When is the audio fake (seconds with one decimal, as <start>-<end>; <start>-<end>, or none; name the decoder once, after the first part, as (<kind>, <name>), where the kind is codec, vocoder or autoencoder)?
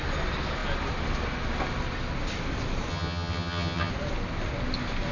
2.9-3.9 (vocoder, HiFi-GAN)